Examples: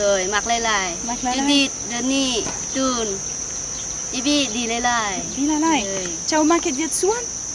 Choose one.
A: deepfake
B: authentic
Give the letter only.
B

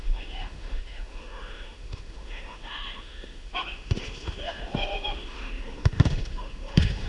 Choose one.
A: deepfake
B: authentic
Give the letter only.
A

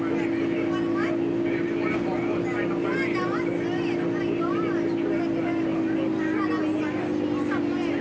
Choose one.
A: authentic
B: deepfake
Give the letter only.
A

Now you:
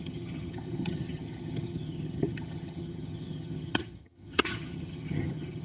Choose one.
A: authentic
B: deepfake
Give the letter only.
B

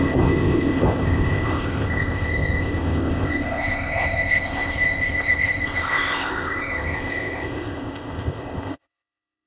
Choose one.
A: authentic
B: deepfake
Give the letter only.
B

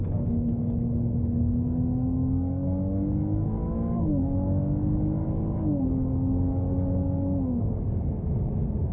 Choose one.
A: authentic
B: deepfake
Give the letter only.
B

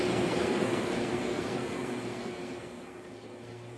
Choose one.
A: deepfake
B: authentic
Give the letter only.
A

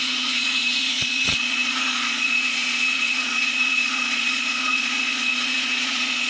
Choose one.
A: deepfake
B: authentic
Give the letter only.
A